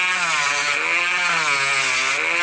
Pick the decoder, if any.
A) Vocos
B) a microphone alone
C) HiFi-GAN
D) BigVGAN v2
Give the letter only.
B